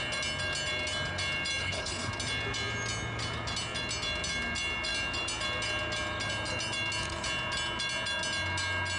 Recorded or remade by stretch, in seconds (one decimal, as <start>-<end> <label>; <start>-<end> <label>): 0.0-1.6 recorded; 1.6-2.1 remade; 2.1-9.0 recorded